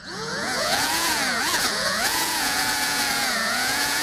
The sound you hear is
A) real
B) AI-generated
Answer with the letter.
B